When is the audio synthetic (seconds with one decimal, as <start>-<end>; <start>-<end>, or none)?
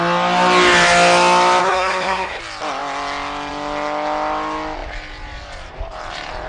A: 1.6-2.4